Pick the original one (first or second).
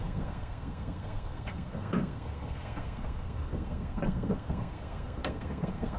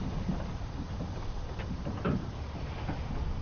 second